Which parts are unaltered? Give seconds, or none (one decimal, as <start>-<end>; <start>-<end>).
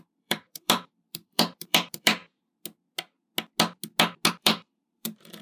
2.2-4.3